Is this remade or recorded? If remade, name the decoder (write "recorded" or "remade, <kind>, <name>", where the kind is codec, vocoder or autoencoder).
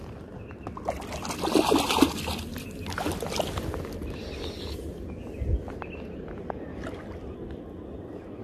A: recorded